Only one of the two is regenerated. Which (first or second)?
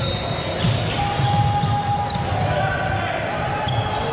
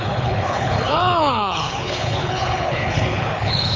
second